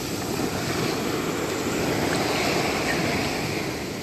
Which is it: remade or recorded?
recorded